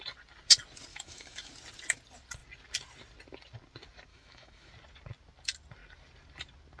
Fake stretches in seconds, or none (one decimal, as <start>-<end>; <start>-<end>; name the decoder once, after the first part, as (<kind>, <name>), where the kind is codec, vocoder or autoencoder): 0.9-1.5 (autoencoder, DAC-VAE); 4.1-4.7